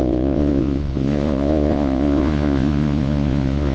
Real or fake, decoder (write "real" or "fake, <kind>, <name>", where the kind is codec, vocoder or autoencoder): fake, vocoder, Vocos